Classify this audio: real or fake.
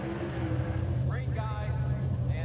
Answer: real